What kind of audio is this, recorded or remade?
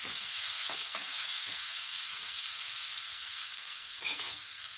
remade